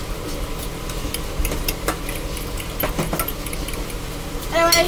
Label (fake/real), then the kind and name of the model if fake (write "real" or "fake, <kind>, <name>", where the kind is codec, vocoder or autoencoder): real